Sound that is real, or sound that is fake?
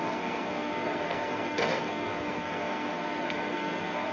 fake